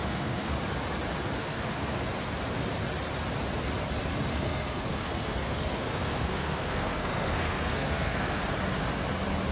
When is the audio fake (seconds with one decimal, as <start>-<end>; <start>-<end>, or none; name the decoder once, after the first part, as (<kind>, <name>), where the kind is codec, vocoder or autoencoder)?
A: 0.0-0.5 (codec, SNAC); 1.4-2.1; 4.3-8.4